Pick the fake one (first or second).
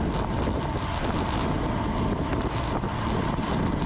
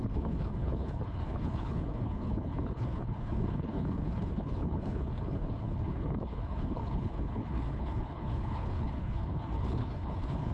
second